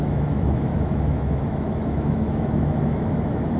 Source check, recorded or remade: remade